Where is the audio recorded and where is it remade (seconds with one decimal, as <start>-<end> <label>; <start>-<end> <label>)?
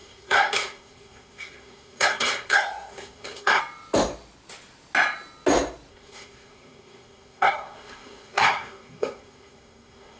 0.0-3.6 remade; 3.6-5.9 recorded; 5.9-10.2 remade